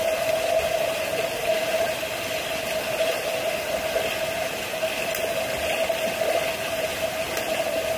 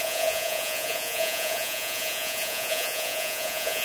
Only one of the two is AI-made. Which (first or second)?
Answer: second